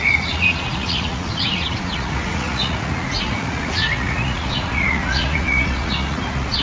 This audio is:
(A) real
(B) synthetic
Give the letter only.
B